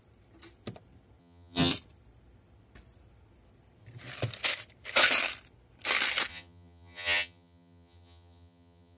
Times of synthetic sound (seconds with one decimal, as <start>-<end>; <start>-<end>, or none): 1.2-1.7; 6.3-9.0